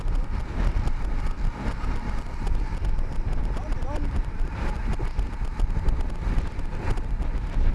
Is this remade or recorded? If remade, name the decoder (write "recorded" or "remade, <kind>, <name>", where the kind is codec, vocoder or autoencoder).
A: recorded